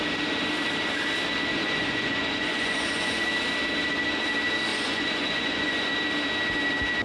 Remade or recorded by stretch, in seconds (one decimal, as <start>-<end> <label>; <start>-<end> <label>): 0.0-1.5 recorded; 1.5-3.2 remade; 3.2-4.7 recorded; 4.7-5.9 remade; 5.9-7.0 recorded